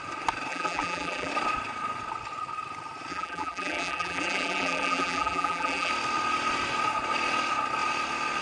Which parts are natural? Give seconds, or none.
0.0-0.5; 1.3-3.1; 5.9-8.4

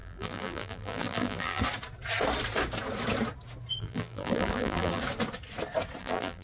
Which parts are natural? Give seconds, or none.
1.6-3.8; 5.0-6.0

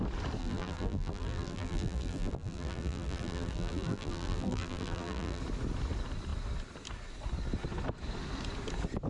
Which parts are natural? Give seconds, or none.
0.0-0.4; 5.4-9.1

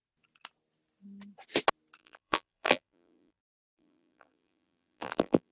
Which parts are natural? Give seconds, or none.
0.0-2.0